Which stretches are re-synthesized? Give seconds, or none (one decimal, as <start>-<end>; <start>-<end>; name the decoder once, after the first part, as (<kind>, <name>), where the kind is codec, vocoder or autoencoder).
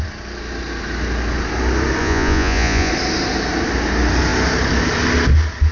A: 2.0-2.9 (vocoder, Vocos)